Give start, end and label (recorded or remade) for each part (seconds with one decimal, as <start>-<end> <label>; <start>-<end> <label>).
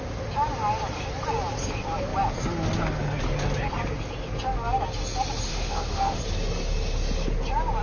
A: 0.0-5.5 recorded; 5.5-6.2 remade; 6.2-7.8 recorded